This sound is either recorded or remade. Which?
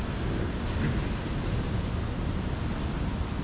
recorded